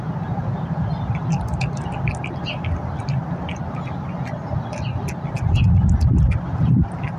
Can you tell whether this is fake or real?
real